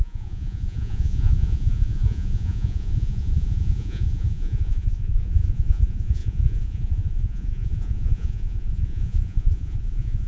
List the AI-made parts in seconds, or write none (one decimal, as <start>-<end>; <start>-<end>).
0.0-10.3